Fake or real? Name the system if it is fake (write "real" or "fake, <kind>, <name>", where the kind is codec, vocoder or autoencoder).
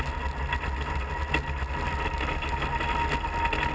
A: real